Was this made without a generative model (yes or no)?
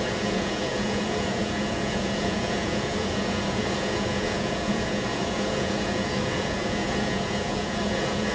no